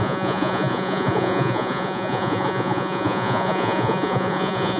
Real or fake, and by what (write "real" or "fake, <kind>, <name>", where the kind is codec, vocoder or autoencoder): fake, vocoder, Vocos